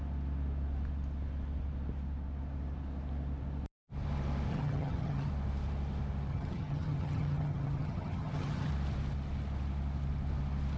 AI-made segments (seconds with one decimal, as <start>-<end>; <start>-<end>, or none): 4.5-5.3; 6.3-8.7